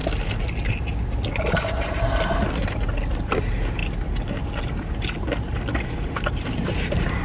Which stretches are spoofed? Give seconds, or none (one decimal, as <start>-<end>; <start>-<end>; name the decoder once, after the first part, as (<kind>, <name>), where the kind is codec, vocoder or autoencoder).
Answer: 1.3-3.8 (vocoder, BigVGAN v2); 5.9-7.2